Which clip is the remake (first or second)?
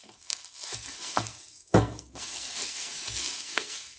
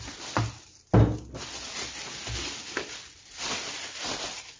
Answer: first